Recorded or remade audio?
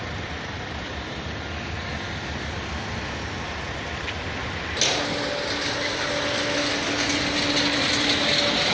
recorded